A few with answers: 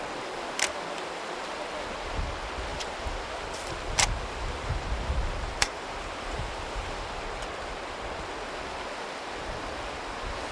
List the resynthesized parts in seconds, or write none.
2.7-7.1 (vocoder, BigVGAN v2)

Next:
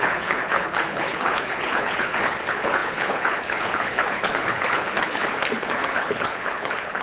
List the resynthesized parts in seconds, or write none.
0.0-7.0 (codec, HILCodec)

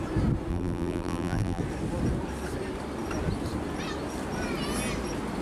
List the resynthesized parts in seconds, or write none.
0.5-1.6 (vocoder, BigVGAN v2)

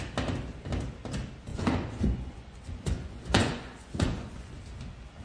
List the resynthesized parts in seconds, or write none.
1.5-4.6 (vocoder, Vocos)

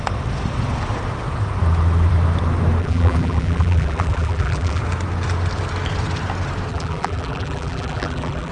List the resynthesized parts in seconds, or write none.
2.8-4.8 (vocoder, BigVGAN v2); 6.7-8.5

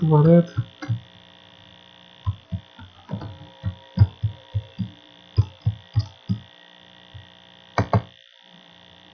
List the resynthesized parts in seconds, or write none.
4.3-5.4 (vocoder, BigVGAN v2); 7.7-9.1

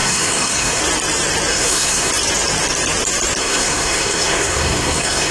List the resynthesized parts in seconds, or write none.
0.0-0.8 (codec, SNAC); 1.5-2.1; 3.4-5.3